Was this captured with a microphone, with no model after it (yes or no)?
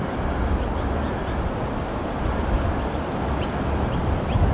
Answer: yes